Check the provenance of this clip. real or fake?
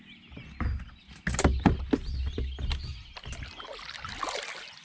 real